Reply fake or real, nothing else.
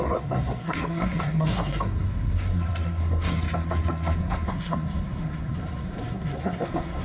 fake